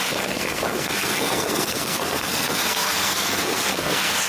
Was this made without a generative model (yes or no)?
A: no